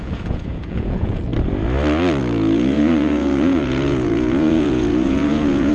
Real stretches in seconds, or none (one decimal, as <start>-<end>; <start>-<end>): 1.3-2.2